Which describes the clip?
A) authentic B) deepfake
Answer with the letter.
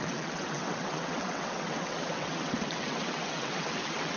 B